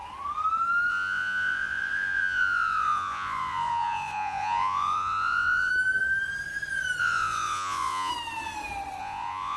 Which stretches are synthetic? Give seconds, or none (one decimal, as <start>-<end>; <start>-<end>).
0.9-5.7; 7.0-8.1; 9.0-9.6